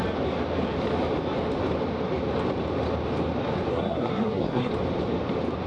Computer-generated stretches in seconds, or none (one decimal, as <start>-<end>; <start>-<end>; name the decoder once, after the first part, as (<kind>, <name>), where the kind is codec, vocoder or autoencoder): 3.7-4.7 (codec, SNAC)